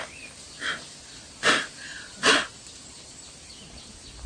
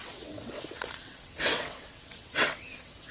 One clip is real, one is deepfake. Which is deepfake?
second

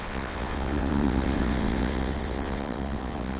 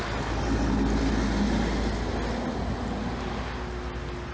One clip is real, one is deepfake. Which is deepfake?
first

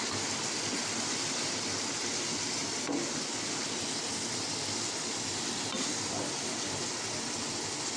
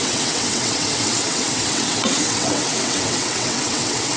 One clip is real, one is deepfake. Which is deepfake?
second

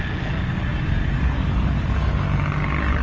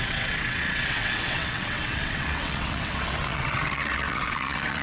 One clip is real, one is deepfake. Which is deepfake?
second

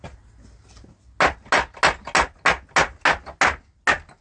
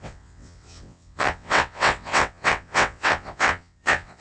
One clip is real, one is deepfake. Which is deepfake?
second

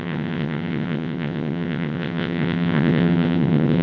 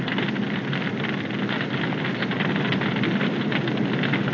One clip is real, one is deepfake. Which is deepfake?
first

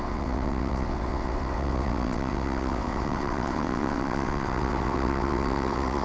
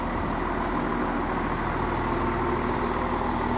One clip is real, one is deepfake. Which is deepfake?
first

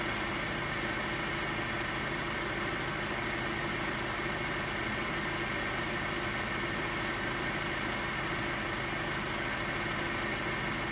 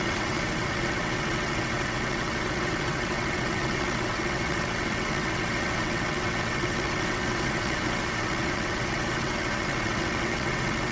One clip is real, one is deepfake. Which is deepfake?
second